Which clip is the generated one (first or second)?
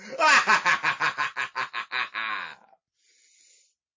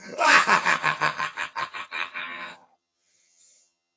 second